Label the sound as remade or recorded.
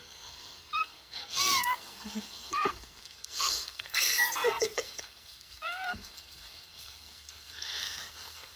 remade